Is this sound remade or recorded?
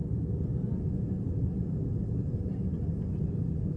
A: recorded